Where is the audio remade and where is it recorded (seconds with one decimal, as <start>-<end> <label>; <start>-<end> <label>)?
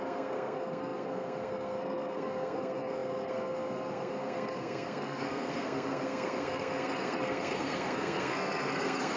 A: 0.0-9.2 remade